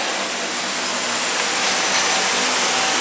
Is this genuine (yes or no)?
yes